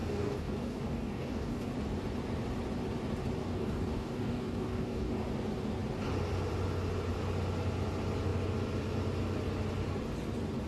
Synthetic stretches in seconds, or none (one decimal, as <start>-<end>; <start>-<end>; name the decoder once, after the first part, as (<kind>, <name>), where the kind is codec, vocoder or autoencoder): 0.0-1.7 (codec, DAC); 3.4-5.3